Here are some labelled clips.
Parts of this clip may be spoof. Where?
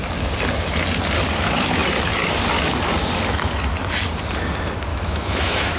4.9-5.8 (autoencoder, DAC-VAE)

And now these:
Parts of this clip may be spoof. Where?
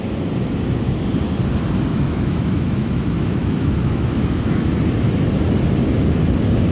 1.9-4.7 (autoencoder, DAC-VAE)